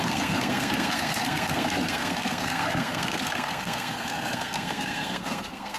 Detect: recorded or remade remade